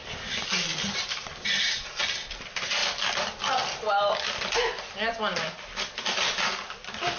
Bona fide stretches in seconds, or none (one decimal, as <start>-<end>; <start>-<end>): 2.0-7.2